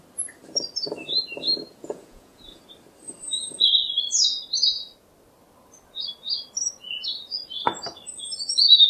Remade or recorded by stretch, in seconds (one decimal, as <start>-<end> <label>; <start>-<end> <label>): 0.0-1.7 recorded; 1.7-2.6 remade; 2.6-8.9 recorded